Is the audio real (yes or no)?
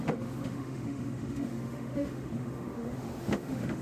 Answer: no